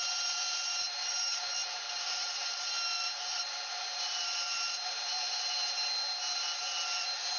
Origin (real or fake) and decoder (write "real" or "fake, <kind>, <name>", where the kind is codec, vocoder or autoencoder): real